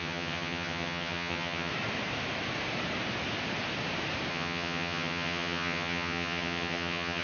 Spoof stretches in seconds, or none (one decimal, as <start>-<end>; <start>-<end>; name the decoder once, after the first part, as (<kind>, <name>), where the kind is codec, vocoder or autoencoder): 0.0-1.7 (vocoder, HiFi-GAN); 4.3-7.2